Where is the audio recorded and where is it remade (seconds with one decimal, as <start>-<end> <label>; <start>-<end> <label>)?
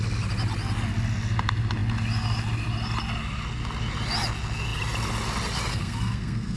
0.0-5.7 recorded; 5.7-6.6 remade